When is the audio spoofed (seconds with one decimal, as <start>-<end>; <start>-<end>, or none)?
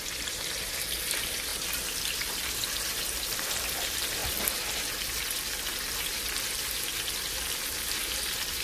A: 0.0-1.5; 2.0-4.2; 6.0-8.6